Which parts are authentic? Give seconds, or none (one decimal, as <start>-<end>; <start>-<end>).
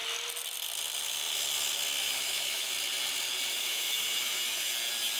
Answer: 0.0-2.0; 2.7-3.5; 4.7-5.2